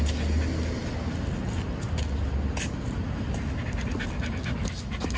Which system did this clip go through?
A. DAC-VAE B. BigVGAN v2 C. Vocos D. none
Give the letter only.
D